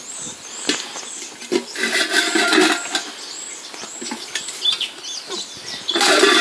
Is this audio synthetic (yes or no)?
no